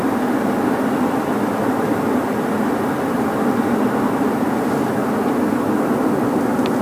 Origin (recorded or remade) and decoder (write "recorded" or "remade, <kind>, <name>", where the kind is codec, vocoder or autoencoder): recorded